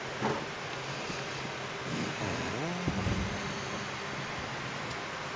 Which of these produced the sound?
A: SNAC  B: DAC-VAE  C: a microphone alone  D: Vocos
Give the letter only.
C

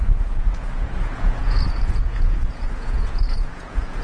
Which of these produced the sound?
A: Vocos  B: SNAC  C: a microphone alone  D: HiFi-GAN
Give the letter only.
A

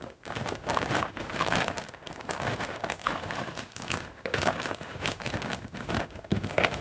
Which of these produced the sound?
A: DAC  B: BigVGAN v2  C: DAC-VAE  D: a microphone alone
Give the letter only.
C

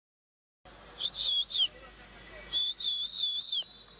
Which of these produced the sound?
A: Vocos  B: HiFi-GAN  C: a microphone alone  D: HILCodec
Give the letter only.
C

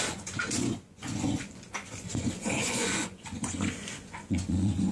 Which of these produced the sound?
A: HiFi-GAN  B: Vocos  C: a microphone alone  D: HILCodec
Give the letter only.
B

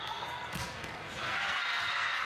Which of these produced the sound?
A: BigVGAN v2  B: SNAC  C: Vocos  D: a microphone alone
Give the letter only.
B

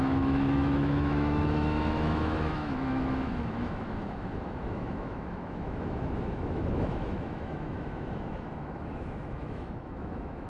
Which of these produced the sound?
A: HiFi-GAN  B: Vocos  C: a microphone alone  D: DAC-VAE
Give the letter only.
D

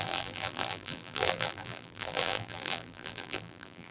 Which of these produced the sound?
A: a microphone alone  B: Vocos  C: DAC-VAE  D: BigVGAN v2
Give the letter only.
D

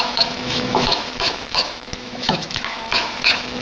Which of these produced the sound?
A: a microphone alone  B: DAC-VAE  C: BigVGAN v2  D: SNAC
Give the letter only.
B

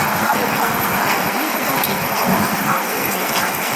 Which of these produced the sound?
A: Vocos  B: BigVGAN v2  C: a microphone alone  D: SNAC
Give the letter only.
D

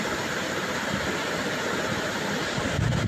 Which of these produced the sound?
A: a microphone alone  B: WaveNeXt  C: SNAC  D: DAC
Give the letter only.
A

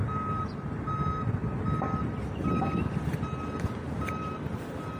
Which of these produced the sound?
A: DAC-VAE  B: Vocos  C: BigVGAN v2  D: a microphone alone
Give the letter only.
D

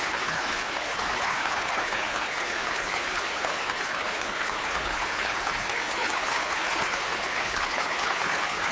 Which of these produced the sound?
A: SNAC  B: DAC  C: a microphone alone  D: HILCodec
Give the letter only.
D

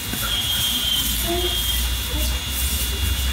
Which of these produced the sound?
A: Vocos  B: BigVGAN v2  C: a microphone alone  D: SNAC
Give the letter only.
C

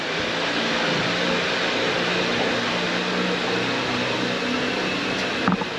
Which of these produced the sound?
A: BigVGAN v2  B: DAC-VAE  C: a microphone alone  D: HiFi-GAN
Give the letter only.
C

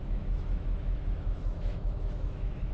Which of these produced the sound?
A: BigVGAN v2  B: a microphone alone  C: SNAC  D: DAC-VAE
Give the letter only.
D